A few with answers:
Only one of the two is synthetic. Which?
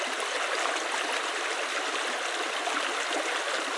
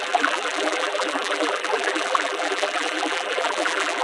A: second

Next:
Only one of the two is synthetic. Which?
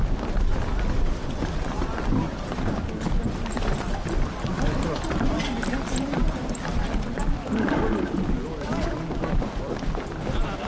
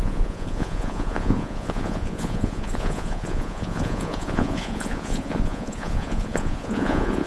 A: second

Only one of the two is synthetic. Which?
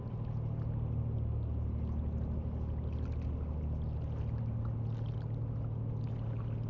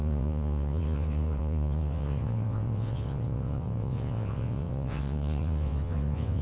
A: second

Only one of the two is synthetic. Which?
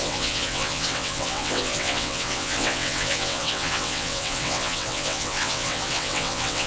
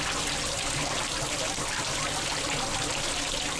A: first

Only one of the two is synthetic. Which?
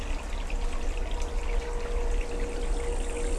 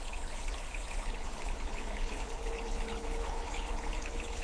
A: second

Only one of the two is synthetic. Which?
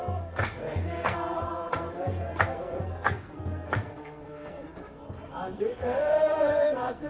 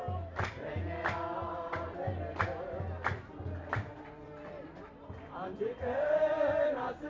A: first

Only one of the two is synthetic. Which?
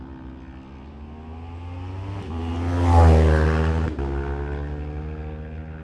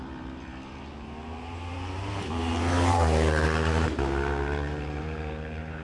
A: second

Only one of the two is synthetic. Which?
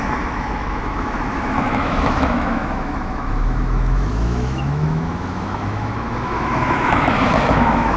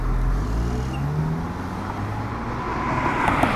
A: first